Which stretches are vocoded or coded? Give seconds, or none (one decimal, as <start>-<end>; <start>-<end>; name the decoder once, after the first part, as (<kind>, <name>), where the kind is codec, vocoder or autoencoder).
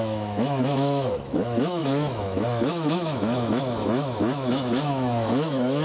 0.0-5.8 (autoencoder, DAC-VAE)